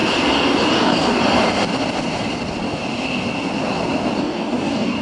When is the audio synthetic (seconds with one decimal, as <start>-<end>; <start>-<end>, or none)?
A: 0.7-1.2; 4.2-5.0